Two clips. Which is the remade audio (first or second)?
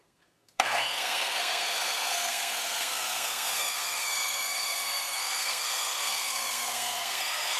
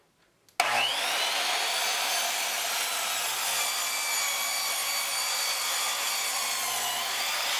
first